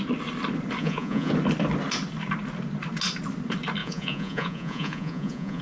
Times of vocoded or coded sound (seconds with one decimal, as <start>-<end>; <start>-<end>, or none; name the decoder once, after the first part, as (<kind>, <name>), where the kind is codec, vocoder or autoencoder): 0.8-1.3 (vocoder, Vocos); 3.8-5.6